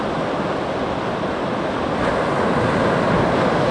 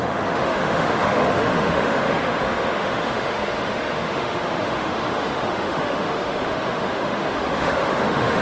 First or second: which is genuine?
first